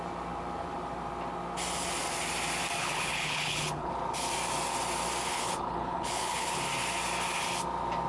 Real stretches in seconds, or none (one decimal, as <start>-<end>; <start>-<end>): 0.0-2.8; 3.9-5.3; 6.6-8.1